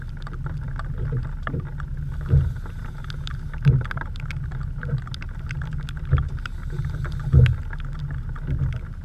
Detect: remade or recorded recorded